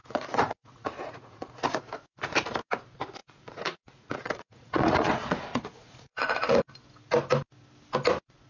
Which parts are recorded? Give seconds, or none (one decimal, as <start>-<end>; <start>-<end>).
1.8-3.2; 6.6-8.5